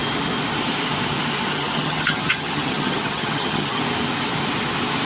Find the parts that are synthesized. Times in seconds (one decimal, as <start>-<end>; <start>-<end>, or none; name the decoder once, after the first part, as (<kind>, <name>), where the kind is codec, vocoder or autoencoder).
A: 1.5-3.8 (vocoder, HiFi-GAN)

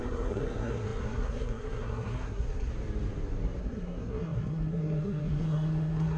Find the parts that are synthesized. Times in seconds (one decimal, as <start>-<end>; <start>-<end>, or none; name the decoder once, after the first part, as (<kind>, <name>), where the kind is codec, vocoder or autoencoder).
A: 0.0-2.7 (codec, SNAC); 3.6-6.2